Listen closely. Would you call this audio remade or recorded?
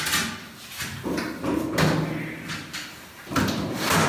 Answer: recorded